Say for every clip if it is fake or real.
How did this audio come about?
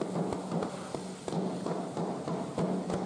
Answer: real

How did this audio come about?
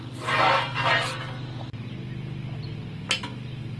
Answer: real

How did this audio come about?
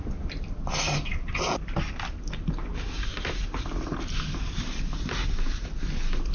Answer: real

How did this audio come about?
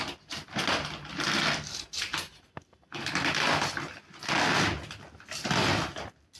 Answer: real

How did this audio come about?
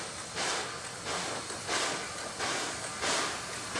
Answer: real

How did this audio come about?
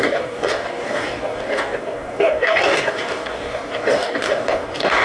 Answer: fake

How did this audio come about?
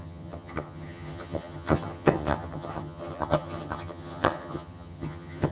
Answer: fake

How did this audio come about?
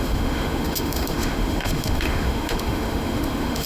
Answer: fake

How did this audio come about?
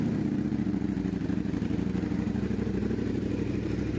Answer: fake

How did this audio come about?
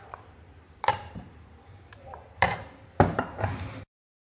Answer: fake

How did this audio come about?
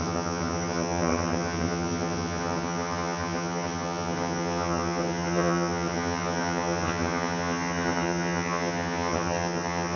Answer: fake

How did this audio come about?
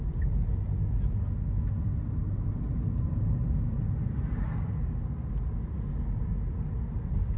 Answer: real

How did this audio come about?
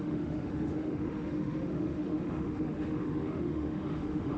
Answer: fake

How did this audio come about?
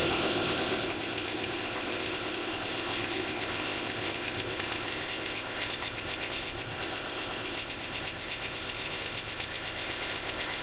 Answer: fake